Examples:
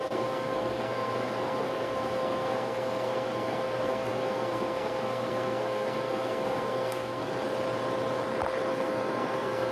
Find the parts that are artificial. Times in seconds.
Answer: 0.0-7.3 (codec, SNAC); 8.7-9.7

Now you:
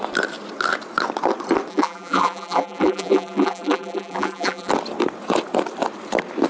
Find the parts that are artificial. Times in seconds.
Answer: 1.7-4.7 (vocoder, BigVGAN v2)

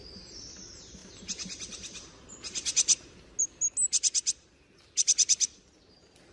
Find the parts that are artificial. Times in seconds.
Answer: none

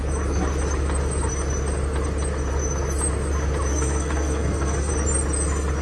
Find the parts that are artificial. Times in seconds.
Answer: 3.7-4.9 (codec, SNAC)

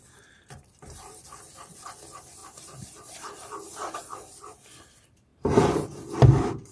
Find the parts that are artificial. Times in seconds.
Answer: 5.3-6.1 (vocoder, BigVGAN v2)

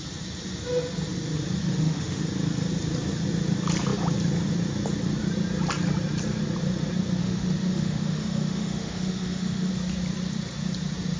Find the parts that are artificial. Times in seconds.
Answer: 1.6-2.2 (autoencoder, DAC-VAE); 7.2-9.7